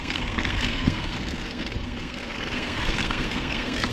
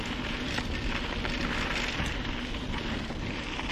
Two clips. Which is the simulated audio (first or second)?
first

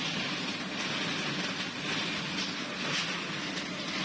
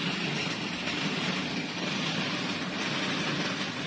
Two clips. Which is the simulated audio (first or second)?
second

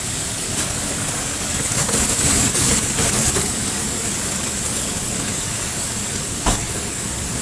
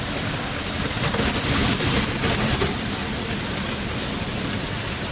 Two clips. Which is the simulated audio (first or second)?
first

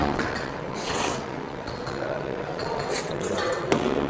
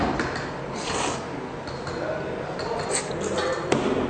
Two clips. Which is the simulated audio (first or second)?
first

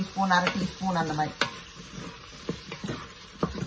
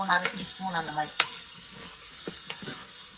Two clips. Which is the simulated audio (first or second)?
second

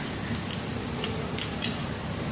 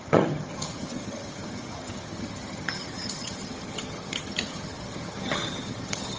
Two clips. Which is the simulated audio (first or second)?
second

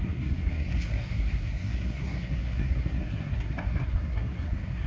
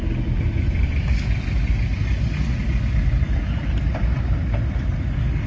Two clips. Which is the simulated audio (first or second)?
first